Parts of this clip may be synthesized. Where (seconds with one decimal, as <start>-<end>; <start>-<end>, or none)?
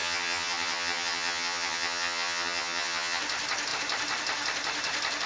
0.0-3.2